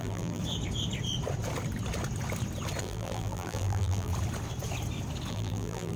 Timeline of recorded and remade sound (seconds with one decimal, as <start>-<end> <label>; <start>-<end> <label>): 0.0-0.4 remade; 0.4-2.8 recorded; 2.8-4.1 remade; 4.1-5.3 recorded; 5.3-6.0 remade